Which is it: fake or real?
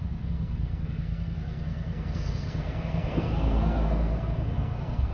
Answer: fake